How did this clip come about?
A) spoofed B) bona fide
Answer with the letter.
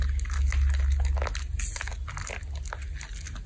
B